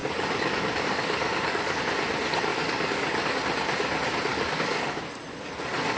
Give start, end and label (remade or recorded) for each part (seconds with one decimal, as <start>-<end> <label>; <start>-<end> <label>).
0.0-1.8 remade; 1.8-2.5 recorded; 2.5-3.4 remade; 3.4-4.3 recorded; 4.3-5.0 remade; 5.0-6.0 recorded

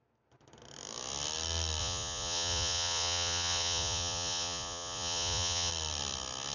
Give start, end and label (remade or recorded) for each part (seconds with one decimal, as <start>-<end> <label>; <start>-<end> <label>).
0.0-1.8 recorded; 1.8-5.7 remade; 5.7-6.5 recorded